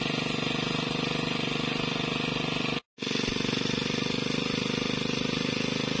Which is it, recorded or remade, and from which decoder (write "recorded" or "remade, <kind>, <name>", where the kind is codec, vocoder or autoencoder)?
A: recorded